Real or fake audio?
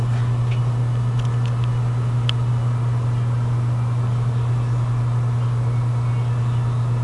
real